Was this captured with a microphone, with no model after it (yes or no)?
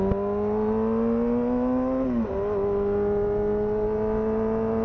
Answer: yes